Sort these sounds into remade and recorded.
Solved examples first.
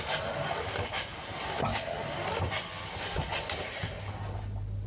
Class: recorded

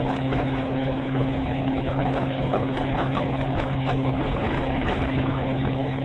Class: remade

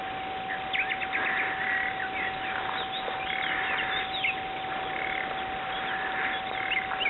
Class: recorded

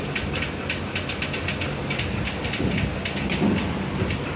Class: recorded